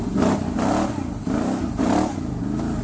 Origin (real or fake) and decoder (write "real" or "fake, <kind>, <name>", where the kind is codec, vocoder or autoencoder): real